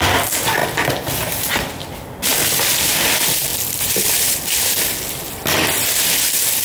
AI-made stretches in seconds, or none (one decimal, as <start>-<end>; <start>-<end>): 2.3-2.9; 3.5-4.6